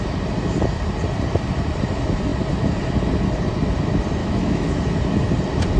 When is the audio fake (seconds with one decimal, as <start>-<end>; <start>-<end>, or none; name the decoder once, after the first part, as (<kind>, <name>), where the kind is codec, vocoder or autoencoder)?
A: 4.2-4.8 (autoencoder, DAC-VAE)